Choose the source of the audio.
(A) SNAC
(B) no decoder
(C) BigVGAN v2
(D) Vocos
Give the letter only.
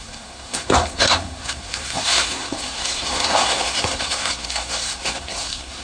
A